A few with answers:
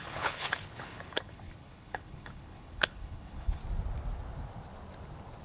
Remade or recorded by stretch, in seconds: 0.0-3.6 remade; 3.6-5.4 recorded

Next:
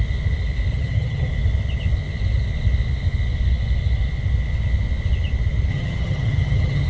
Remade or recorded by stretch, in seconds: 0.0-0.7 recorded; 0.7-1.3 remade; 1.3-5.7 recorded; 5.7-6.9 remade